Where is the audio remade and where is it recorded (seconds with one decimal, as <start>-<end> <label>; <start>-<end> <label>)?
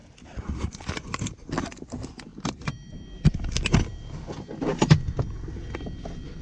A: 0.0-2.3 recorded; 2.3-4.3 remade; 4.3-6.4 recorded